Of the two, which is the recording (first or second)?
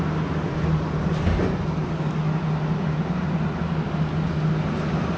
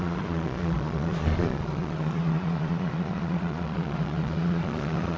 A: first